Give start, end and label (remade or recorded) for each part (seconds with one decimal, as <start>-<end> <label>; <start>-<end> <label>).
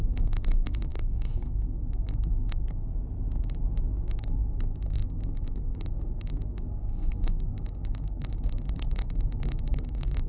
0.0-2.9 remade; 2.9-4.2 recorded; 4.2-10.3 remade